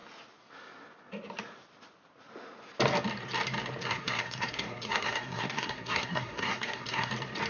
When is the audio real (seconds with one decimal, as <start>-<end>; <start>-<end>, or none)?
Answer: 0.0-3.8; 7.1-7.5